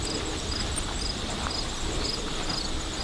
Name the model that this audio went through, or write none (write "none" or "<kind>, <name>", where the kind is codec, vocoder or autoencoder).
vocoder, BigVGAN v2